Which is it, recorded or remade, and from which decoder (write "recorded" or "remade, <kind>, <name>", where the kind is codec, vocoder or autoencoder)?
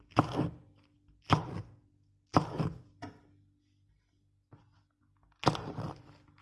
recorded